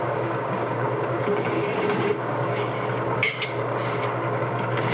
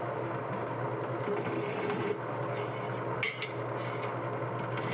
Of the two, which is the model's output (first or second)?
first